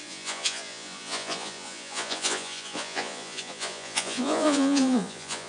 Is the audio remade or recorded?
remade